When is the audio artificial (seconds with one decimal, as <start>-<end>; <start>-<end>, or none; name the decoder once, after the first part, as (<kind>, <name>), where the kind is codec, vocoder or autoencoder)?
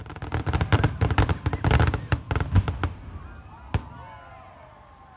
none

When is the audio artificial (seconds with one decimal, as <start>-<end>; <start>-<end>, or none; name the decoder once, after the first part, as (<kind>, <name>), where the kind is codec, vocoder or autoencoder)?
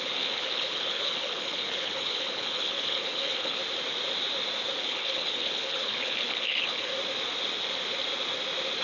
0.0-3.6 (codec, HILCodec); 4.8-6.9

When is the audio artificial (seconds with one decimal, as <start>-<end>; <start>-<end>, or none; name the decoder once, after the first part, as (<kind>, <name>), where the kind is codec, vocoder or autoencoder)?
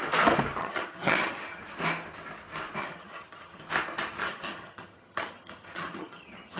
0.6-1.6 (vocoder, HiFi-GAN); 2.8-3.6; 4.2-6.6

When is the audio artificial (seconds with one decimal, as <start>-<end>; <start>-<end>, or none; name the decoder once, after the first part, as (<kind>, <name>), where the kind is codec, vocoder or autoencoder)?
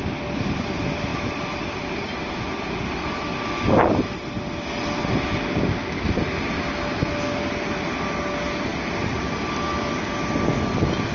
5.8-6.3 (vocoder, BigVGAN v2)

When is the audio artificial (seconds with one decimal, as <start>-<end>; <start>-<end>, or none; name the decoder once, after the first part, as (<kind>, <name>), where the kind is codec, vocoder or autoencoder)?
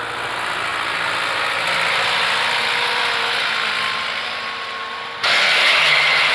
none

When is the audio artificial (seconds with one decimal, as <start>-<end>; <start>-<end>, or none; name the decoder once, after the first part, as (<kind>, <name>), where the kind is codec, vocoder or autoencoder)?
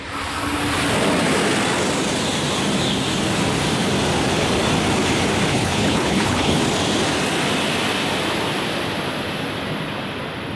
5.5-6.6 (codec, HILCodec)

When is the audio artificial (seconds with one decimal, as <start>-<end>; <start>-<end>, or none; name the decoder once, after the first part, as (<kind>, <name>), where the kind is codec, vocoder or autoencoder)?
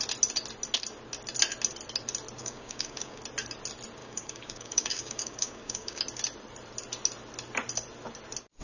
2.4-3.2 (codec, DAC); 4.0-6.0